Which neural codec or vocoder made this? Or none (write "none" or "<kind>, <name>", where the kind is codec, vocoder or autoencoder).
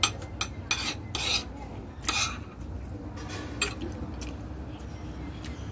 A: none